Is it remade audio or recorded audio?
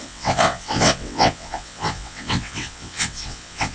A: remade